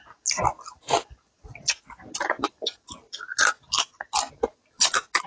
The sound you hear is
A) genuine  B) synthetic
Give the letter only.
A